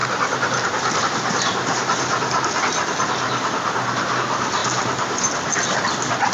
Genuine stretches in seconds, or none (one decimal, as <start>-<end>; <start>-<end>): 0.0-6.3